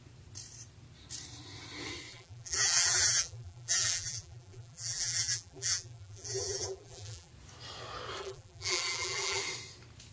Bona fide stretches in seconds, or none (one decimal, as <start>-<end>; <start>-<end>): 0.0-2.1; 7.3-8.2; 9.4-10.1